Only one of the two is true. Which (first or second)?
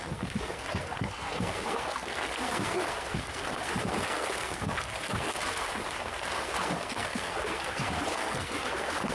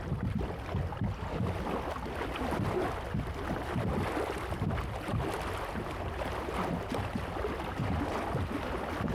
second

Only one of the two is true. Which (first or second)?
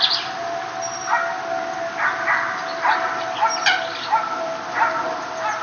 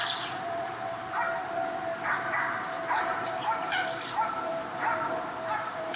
first